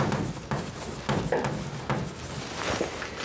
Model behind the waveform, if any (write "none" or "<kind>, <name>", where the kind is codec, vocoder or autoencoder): none